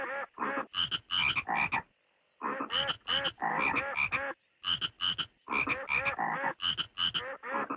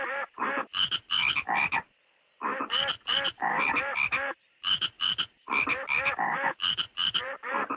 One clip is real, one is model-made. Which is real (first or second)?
first